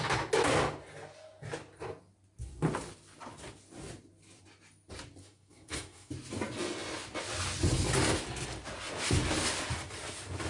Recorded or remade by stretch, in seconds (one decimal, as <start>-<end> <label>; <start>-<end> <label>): 0.0-5.2 recorded; 5.2-6.1 remade; 6.1-10.5 recorded